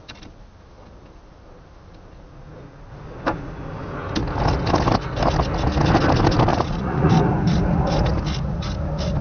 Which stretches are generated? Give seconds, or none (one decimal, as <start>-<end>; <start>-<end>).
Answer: 6.5-7.1